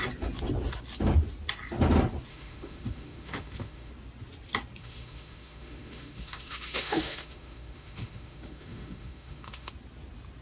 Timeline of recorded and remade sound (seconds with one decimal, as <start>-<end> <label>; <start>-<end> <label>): 0.0-2.3 recorded; 2.3-3.9 remade; 3.9-4.8 recorded; 4.8-9.7 remade; 9.7-10.4 recorded